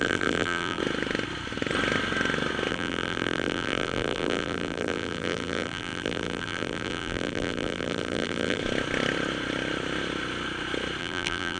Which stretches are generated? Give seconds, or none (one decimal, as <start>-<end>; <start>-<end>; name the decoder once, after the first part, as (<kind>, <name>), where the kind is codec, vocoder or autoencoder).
0.0-0.8 (vocoder, BigVGAN v2); 2.7-8.6; 11.0-11.6